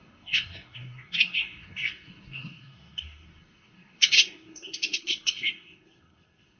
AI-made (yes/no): yes